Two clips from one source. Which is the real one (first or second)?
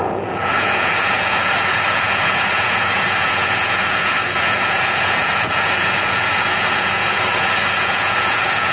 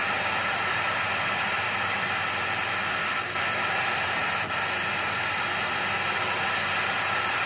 second